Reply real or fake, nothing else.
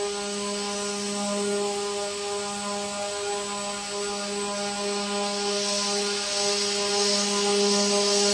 real